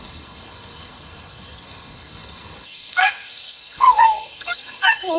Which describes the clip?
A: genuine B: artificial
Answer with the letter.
B